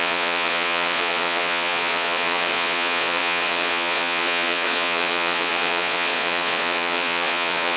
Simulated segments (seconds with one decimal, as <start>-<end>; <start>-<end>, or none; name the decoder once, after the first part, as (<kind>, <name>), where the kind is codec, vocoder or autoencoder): 0.0-7.8 (vocoder, Vocos)